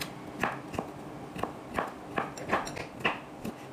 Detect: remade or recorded recorded